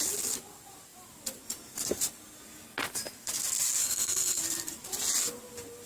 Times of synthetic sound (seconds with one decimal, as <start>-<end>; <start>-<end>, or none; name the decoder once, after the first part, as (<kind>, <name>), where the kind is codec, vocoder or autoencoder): 3.8-4.4 (codec, SNAC)